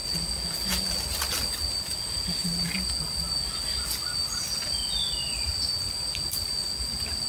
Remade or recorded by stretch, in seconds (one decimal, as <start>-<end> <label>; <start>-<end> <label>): 0.0-7.3 recorded